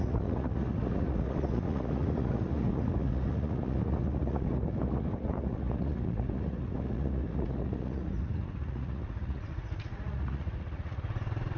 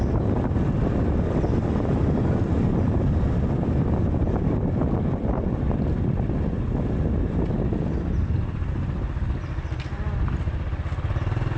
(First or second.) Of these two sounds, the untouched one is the second